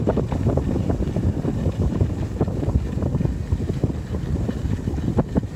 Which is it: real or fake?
real